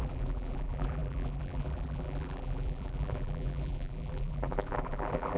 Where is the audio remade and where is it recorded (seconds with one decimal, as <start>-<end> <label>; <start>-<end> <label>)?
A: 0.0-5.4 remade